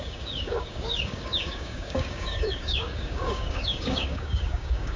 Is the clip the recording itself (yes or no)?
no